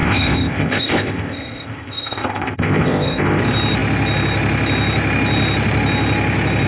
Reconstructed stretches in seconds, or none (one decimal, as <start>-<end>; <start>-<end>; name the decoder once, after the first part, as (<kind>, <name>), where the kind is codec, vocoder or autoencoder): 0.0-3.4 (codec, ZipCodec)